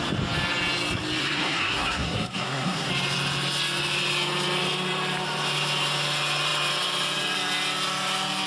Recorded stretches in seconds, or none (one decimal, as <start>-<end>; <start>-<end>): 0.0-1.2; 2.9-8.5